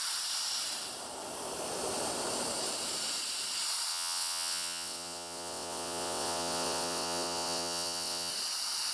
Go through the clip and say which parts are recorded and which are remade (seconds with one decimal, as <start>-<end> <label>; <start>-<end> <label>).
0.0-3.9 recorded; 3.9-8.3 remade; 8.3-8.9 recorded